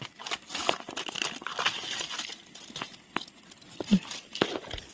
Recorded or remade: recorded